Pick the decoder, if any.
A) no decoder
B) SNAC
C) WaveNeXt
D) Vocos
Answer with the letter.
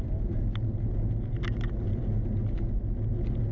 A